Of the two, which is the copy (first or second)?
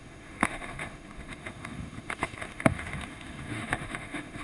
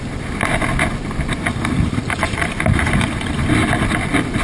first